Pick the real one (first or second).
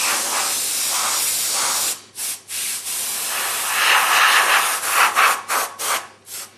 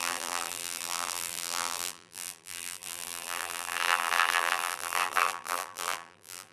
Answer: first